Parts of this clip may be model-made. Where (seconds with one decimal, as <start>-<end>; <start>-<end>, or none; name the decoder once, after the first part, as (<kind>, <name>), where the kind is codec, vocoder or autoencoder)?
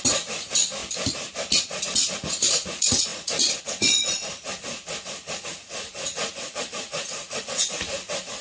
0.0-0.8 (vocoder, Vocos); 1.6-8.4